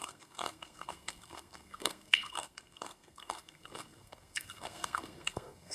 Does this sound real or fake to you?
fake